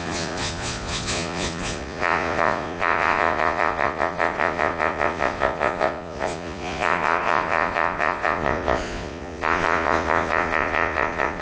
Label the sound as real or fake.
fake